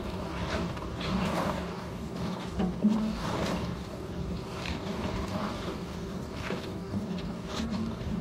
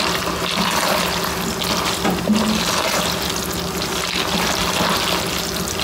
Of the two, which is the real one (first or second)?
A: second